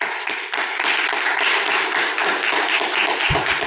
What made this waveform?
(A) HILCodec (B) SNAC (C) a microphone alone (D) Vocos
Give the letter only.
C